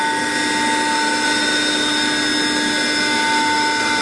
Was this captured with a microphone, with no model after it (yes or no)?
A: yes